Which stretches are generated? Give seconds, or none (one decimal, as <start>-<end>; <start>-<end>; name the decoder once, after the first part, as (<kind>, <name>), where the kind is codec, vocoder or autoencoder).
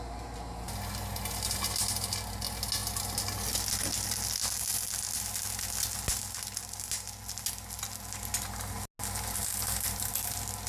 none